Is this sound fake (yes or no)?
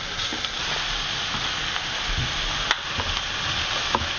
yes